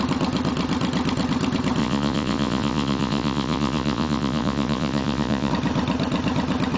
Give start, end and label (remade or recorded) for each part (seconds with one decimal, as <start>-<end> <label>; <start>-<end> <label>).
0.0-1.8 recorded; 1.8-5.5 remade; 5.5-6.8 recorded